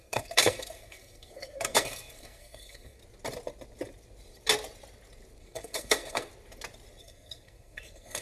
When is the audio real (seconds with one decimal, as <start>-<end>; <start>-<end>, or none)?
3.0-5.4; 6.3-7.0